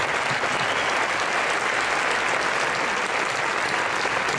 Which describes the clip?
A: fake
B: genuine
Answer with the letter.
B